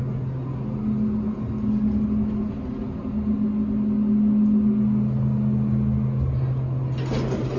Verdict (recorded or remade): recorded